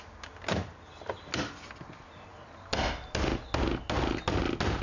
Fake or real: real